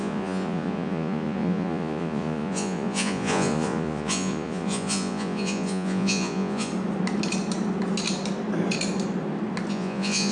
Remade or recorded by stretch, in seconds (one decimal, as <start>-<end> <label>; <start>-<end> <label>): 0.0-6.7 remade; 6.7-9.7 recorded; 9.7-10.3 remade